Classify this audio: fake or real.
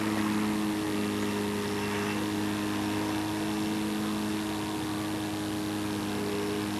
real